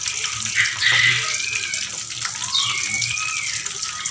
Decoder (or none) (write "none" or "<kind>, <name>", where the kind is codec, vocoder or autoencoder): none